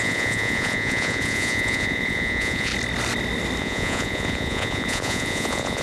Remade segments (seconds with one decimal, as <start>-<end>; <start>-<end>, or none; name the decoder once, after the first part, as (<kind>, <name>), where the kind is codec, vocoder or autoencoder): 0.0-2.7 (vocoder, Vocos); 3.6-5.8